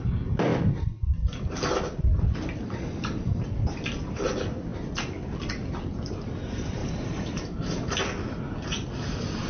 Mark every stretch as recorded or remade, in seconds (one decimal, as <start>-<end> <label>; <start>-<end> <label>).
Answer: 0.0-6.8 recorded; 6.8-8.0 remade; 8.0-9.5 recorded